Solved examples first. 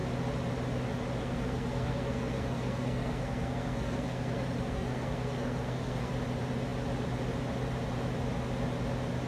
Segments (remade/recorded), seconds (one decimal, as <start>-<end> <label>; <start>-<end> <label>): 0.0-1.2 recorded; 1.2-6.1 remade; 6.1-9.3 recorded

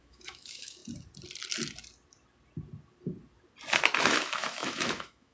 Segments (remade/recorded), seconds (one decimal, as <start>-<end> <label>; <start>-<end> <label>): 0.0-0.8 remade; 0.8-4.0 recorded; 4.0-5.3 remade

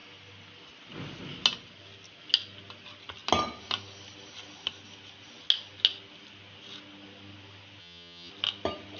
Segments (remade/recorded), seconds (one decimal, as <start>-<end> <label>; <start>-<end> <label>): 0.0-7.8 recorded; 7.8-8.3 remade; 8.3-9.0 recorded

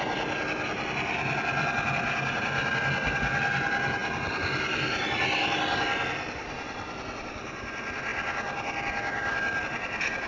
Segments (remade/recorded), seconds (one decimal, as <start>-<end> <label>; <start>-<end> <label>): 0.0-10.3 recorded

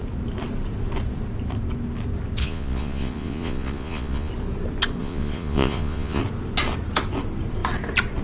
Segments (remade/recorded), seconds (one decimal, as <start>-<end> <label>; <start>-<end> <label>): 0.0-2.4 recorded; 2.4-4.3 remade; 4.3-5.0 recorded; 5.0-6.2 remade; 6.2-8.2 recorded